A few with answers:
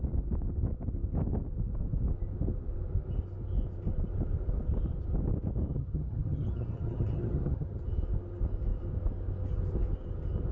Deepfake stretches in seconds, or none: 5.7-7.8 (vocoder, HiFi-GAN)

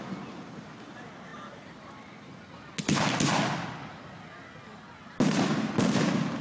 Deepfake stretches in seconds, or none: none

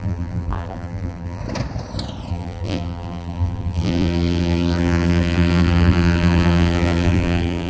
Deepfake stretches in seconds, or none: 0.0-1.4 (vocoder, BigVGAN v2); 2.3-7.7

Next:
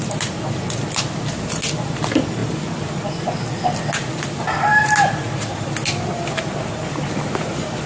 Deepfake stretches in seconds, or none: none

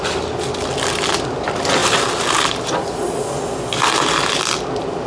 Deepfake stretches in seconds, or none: none

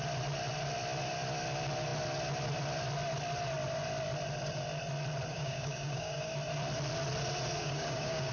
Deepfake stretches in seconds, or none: 5.3-6.3 (codec, DAC); 7.6-8.3

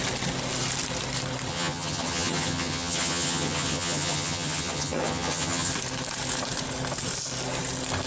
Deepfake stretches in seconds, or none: 1.5-5.7 (vocoder, HiFi-GAN)

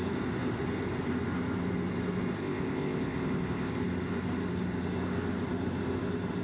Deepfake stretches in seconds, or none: 2.4-3.7 (codec, ZipCodec)